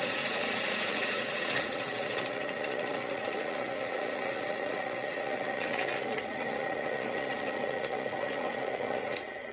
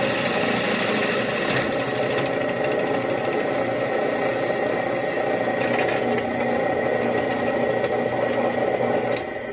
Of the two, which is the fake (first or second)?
first